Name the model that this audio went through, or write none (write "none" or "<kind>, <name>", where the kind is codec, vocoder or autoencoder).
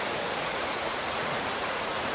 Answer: vocoder, Vocos